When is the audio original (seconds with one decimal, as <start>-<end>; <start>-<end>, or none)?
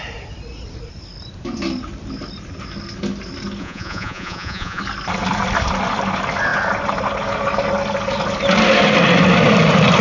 0.0-3.6; 4.8-10.0